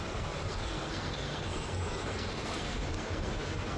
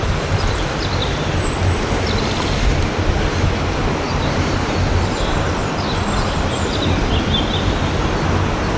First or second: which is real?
second